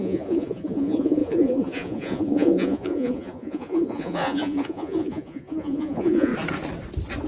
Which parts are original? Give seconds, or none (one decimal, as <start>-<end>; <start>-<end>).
6.3-7.3